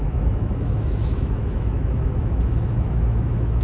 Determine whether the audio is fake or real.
fake